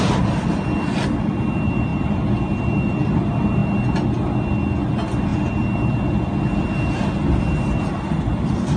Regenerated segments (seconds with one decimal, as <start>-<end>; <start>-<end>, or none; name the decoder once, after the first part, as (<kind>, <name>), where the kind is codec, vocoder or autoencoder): none